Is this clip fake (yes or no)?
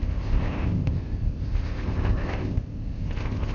yes